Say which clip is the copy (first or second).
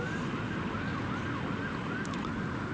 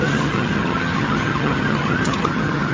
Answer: second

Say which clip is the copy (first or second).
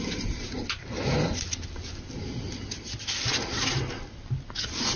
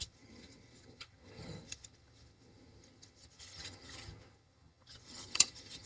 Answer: second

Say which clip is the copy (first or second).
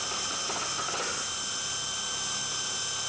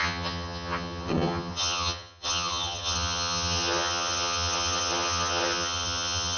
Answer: second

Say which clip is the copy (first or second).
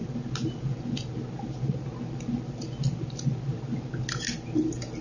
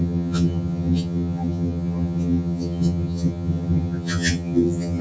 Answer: second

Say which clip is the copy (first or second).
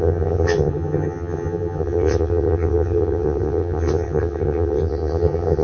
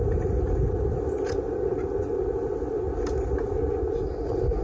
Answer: first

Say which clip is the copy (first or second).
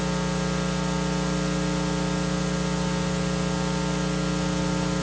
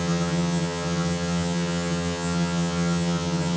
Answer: second